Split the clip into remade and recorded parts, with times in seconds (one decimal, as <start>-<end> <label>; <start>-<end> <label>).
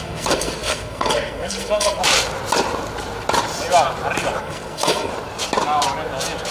0.0-2.0 remade; 2.0-4.4 recorded; 4.4-5.1 remade; 5.1-6.5 recorded